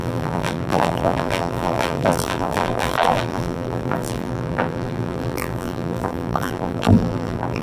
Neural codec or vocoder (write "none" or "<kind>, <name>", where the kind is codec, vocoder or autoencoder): vocoder, BigVGAN v2